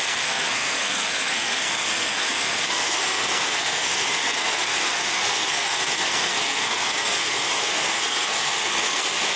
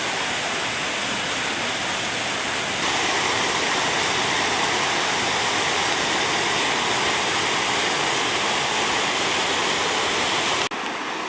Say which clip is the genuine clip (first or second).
second